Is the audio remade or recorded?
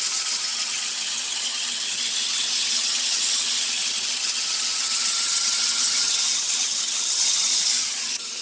remade